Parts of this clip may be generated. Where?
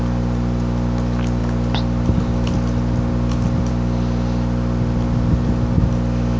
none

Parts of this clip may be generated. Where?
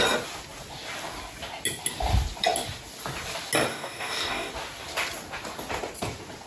3.7-4.5 (codec, DAC)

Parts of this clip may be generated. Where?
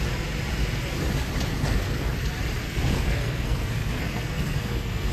1.5-2.1 (codec, SNAC); 2.6-5.1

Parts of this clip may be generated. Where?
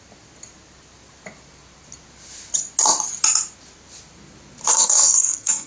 4.7-5.7 (codec, SNAC)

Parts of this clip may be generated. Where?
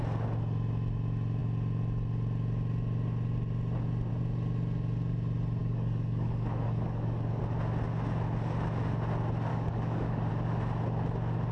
5.6-7.4 (codec, DAC); 9.5-10.3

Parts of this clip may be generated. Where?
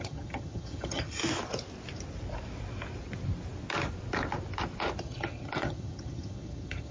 0.0-1.2 (vocoder, HiFi-GAN); 5.0-6.9